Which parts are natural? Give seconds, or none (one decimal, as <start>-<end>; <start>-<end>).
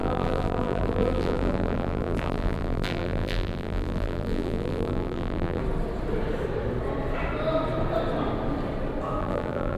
5.6-9.2